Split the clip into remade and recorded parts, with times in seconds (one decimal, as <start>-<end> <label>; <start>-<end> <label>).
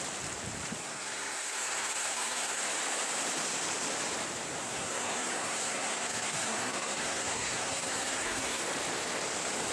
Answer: 0.0-0.8 recorded; 0.8-2.6 remade; 2.6-4.6 recorded; 4.6-8.6 remade; 8.6-9.7 recorded